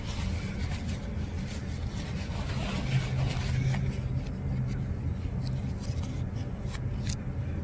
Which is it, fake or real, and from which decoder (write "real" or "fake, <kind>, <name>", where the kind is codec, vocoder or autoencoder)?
real